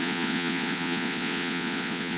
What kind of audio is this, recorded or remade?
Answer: remade